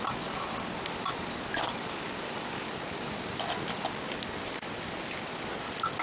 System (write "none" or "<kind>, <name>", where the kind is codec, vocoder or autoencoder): none